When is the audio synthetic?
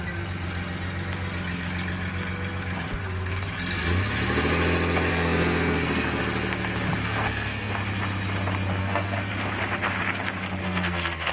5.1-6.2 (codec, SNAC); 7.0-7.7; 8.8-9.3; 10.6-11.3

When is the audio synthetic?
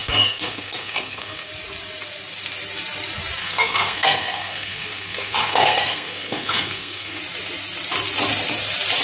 0.0-1.5 (codec, SNAC); 3.4-7.2